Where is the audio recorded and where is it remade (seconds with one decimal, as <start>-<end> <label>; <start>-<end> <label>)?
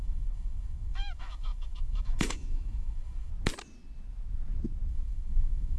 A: 0.0-3.3 remade; 3.3-4.9 recorded; 4.9-5.8 remade